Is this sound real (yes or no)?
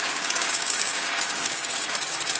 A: no